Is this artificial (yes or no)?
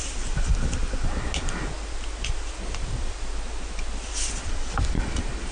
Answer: no